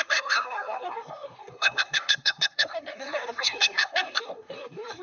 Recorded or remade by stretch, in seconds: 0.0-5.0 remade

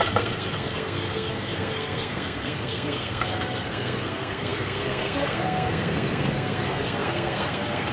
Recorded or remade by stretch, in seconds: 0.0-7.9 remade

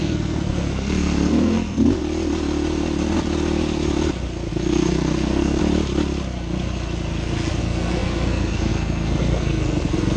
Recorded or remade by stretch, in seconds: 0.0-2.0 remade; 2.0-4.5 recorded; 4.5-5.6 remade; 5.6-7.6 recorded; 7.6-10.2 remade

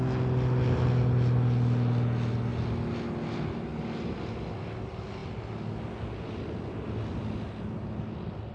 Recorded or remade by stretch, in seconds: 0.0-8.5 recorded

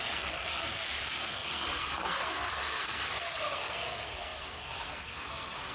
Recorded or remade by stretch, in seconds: 0.0-5.7 remade

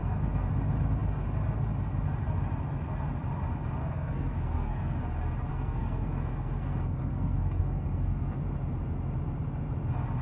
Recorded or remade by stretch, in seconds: 0.0-0.5 remade; 0.5-3.8 recorded; 3.8-5.0 remade; 5.0-5.5 recorded; 5.5-8.4 remade; 8.4-10.2 recorded

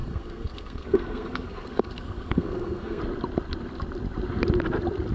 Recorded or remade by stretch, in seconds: 0.0-3.0 remade; 3.0-5.1 recorded